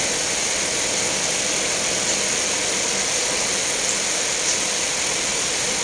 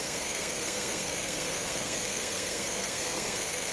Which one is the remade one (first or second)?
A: second